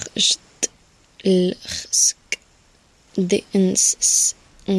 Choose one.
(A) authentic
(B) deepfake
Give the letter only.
A